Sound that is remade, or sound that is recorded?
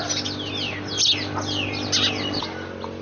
recorded